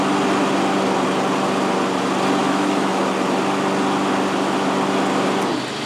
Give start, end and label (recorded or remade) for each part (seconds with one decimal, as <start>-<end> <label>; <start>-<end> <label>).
0.0-2.4 recorded; 2.4-3.0 remade; 3.0-5.9 recorded